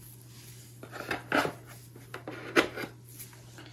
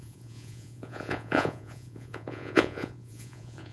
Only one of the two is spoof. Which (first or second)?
second